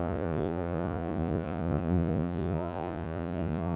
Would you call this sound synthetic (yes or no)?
yes